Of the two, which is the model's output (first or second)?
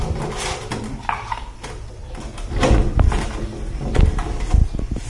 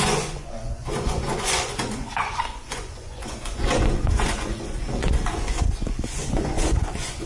second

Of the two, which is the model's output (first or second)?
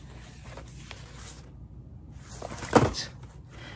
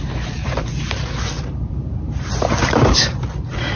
second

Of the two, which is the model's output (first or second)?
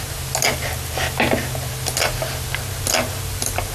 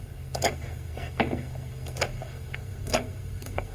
second